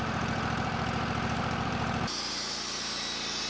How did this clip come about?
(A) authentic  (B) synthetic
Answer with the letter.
B